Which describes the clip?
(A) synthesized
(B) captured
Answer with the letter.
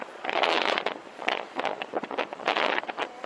A